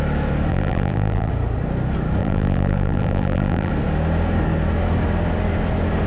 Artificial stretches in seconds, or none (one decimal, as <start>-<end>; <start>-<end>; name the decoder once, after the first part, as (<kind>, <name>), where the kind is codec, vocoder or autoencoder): 0.5-1.3 (vocoder, BigVGAN v2); 2.2-3.7